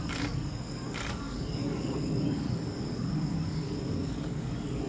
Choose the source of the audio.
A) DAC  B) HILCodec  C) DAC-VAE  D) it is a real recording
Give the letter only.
A